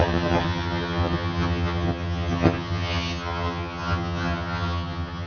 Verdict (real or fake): fake